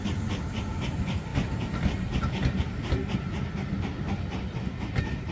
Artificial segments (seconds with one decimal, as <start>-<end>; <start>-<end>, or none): none